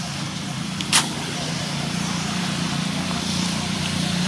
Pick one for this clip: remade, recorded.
remade